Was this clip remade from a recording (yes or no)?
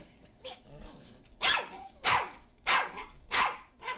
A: yes